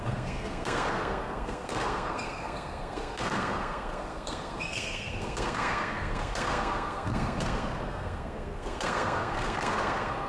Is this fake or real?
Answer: fake